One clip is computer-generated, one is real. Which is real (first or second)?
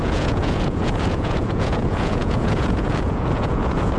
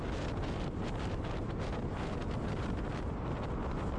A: second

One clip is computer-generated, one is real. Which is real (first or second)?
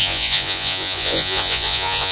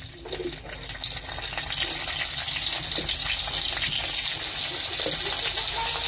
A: second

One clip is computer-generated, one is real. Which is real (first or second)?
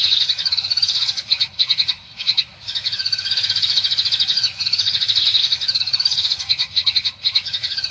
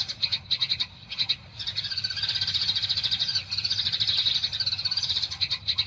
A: second